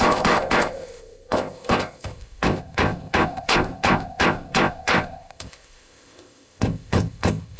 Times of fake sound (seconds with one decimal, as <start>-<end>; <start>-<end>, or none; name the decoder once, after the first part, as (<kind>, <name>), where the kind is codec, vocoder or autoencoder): 0.0-7.6 (codec, ZipCodec)